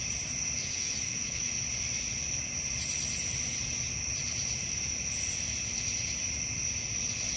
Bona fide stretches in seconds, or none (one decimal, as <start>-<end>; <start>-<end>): 0.0-0.6; 1.5-7.4